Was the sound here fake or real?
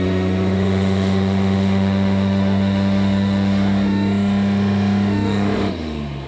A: fake